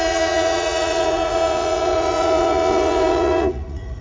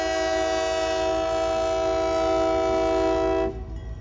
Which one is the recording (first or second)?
second